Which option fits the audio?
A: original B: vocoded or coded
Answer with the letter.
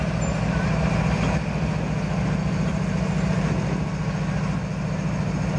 A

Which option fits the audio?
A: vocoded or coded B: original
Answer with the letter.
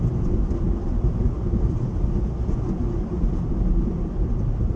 B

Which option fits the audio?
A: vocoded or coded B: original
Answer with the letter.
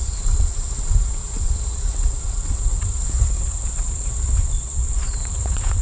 A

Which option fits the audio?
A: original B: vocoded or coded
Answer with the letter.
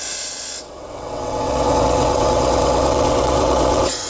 B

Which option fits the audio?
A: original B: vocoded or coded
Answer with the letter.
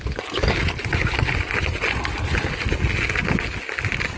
A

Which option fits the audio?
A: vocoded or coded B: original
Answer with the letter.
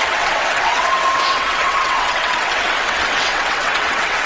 A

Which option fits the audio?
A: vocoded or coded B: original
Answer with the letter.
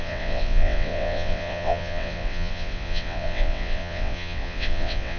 A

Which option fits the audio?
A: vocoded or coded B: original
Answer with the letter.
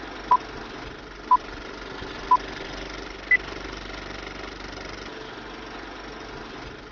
B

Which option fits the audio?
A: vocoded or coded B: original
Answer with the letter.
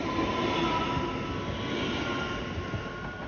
B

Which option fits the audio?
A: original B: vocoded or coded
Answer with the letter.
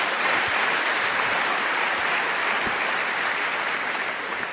A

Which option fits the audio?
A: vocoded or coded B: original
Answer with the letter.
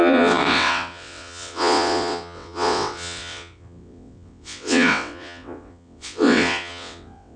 A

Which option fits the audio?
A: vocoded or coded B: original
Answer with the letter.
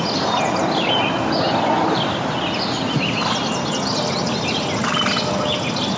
B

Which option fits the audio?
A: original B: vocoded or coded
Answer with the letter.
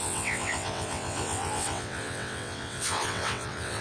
B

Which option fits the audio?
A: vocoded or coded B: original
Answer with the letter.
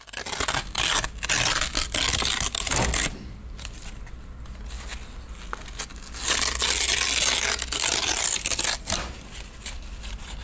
B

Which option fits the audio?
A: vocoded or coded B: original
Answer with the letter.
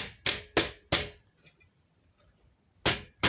B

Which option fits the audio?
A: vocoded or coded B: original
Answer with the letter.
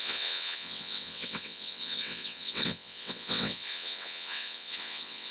A